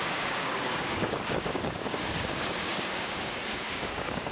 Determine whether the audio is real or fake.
fake